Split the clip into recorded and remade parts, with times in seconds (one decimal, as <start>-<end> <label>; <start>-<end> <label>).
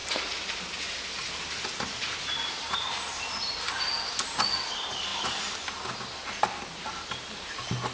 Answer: 0.0-7.9 recorded